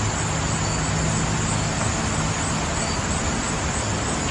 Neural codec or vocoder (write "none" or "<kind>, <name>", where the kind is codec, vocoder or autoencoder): none